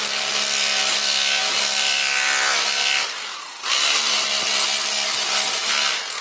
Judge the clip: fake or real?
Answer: real